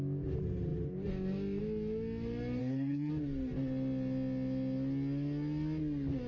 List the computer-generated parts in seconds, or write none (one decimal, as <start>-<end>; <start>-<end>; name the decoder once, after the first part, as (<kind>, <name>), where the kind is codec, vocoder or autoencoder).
2.6-3.1 (codec, SNAC)